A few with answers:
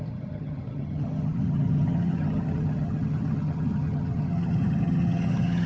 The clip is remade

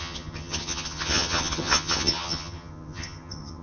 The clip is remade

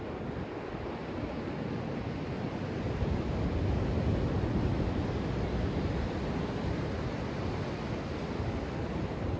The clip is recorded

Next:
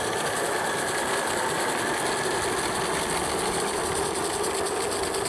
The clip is recorded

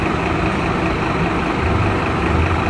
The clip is recorded